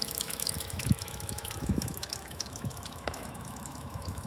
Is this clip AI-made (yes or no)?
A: yes